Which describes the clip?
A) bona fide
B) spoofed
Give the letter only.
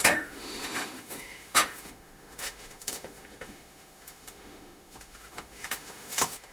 B